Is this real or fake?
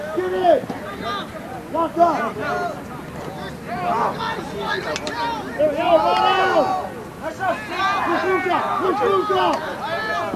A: real